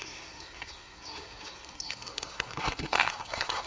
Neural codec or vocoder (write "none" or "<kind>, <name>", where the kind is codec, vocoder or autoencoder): codec, SNAC